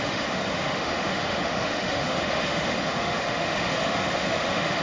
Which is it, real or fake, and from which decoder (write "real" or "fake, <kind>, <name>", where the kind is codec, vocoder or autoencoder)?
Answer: fake, autoencoder, DAC-VAE